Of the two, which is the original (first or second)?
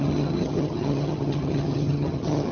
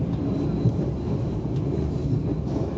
second